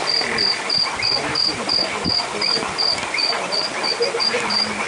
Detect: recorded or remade remade